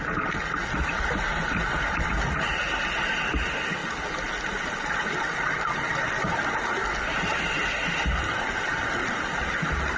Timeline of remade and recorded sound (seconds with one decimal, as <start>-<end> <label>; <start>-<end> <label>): 0.0-10.0 recorded